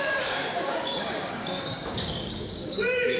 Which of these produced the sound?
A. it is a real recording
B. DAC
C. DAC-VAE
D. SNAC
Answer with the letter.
B